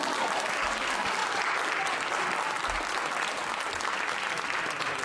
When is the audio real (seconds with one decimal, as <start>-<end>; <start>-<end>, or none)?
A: 1.2-3.1